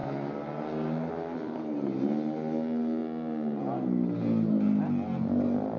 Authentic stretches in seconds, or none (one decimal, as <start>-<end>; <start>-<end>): 0.0-5.8